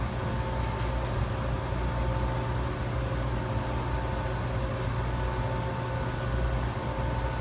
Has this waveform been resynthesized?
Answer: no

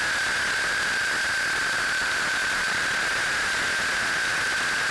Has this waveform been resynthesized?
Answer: yes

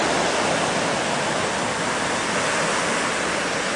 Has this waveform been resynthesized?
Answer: no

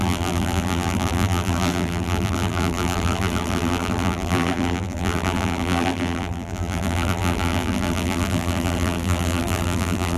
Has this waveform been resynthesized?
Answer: yes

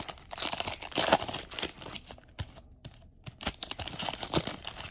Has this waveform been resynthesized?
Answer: yes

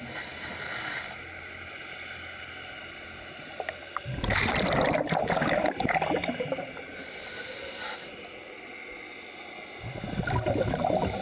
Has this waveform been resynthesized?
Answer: no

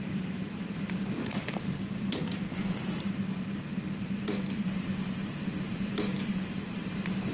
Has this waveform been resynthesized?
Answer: yes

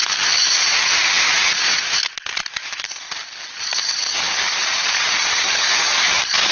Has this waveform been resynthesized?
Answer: no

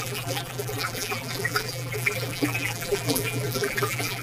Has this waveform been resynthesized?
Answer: yes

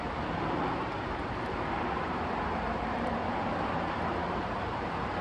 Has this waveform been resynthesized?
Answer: yes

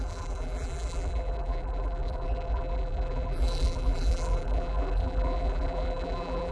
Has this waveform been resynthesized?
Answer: yes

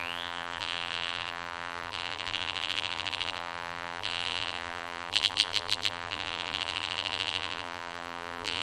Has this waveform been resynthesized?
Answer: yes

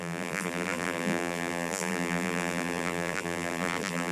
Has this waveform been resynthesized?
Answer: yes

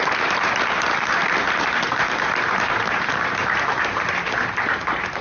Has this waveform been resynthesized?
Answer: yes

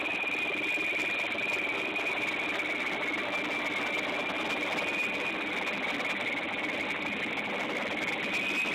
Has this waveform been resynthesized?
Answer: no